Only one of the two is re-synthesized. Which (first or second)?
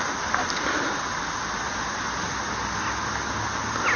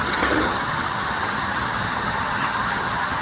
second